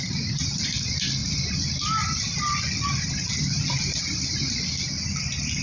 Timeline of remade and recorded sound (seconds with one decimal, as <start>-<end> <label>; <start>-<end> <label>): 0.0-5.6 recorded